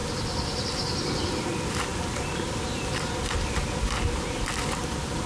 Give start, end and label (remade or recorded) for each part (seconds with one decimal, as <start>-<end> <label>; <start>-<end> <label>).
0.0-5.3 recorded